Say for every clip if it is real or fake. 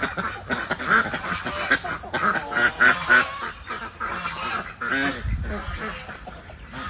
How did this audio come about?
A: real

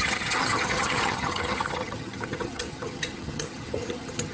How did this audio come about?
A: fake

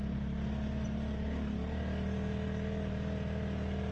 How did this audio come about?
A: real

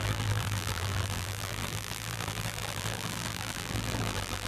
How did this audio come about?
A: fake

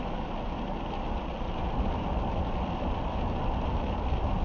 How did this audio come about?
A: real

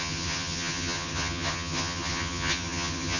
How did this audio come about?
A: fake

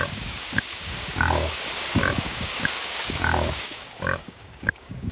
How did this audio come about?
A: fake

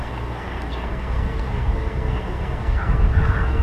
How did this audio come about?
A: fake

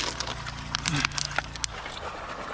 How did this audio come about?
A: real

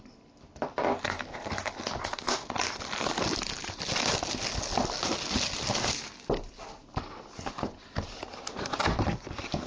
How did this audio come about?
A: real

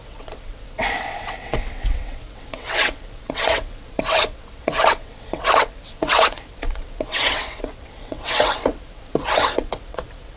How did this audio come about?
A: fake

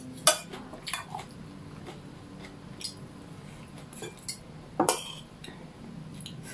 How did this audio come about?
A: real